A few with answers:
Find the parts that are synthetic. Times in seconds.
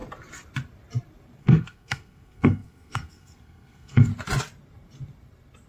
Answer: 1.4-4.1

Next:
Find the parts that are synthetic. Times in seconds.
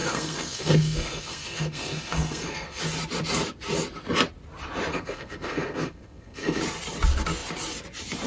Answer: 0.0-2.8; 4.9-6.6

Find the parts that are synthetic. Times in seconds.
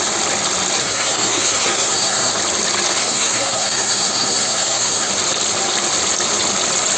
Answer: 0.8-2.3; 3.0-5.1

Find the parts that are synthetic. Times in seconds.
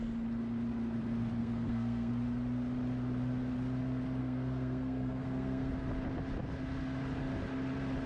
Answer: 1.4-2.1; 4.2-5.7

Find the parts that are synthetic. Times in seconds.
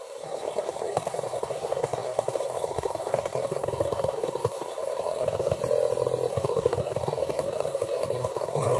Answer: 0.0-5.6; 6.3-8.8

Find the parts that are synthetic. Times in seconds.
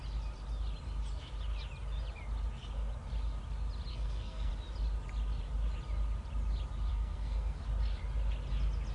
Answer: 3.9-4.5; 6.9-7.6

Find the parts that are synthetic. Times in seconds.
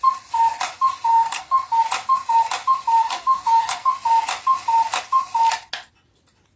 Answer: 1.1-1.8; 3.0-3.9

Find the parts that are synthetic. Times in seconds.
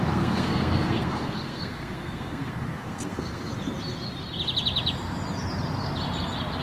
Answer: 0.0-3.5